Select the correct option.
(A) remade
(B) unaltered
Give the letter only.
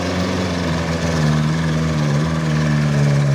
B